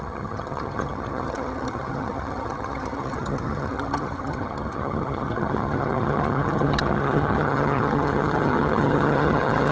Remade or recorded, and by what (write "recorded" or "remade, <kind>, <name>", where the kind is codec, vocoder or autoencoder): remade, vocoder, HiFi-GAN